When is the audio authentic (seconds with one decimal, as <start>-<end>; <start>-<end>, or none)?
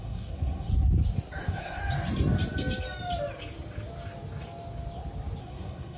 0.7-1.4; 1.8-5.4